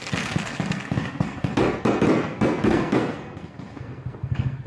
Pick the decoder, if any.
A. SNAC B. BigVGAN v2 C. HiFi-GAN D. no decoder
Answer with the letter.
A